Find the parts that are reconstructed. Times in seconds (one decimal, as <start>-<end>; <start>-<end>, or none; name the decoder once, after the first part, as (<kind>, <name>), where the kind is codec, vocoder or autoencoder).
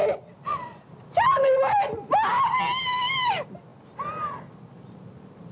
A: none